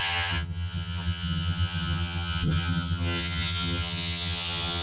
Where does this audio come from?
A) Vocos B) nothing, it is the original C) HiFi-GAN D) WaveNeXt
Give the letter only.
C